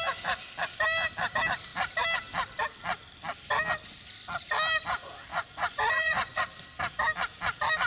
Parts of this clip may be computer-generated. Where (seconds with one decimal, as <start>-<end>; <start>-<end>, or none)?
5.3-6.4